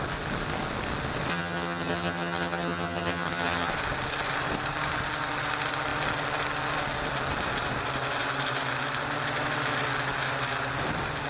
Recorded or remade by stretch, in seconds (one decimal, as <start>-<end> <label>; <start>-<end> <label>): 0.0-1.3 recorded; 1.3-3.7 remade; 3.7-11.3 recorded